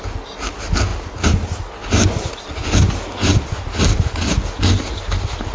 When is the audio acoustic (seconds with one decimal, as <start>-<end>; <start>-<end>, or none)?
0.0-5.5

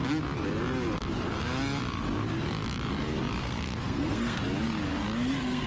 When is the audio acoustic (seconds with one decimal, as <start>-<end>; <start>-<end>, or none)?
0.0-3.4; 4.4-5.3

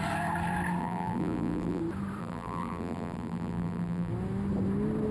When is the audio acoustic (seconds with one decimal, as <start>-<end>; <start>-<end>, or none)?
0.0-0.8; 1.8-2.2; 4.1-5.1

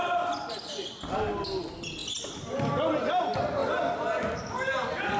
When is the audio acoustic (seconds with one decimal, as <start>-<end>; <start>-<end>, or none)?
0.0-5.2

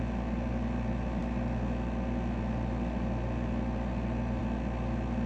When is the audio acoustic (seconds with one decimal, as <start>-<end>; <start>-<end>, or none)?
0.0-5.3

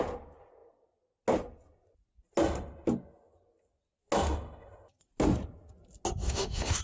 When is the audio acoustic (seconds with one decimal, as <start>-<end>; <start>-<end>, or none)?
0.0-6.2

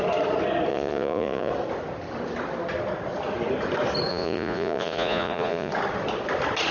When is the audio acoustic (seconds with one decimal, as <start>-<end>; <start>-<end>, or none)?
0.0-0.7; 1.5-4.1; 5.7-6.7